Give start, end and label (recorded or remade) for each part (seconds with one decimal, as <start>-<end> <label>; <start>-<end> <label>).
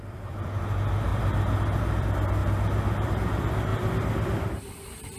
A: 0.0-2.4 recorded; 2.4-3.2 remade; 3.2-3.7 recorded; 3.7-4.6 remade; 4.6-5.2 recorded